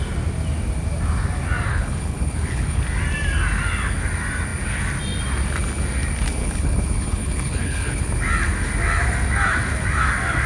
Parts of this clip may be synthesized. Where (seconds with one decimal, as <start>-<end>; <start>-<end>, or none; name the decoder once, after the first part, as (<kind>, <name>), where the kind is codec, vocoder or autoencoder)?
1.7-2.8 (codec, HILCodec); 6.4-8.1